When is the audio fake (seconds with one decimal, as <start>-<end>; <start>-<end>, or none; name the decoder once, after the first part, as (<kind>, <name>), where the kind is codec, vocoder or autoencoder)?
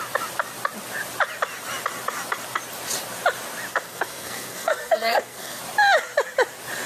3.7-5.6 (codec, SNAC)